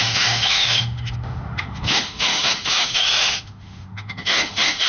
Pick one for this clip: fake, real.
fake